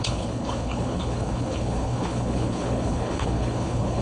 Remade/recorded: remade